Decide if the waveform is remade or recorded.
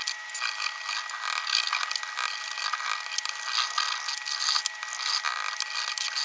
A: recorded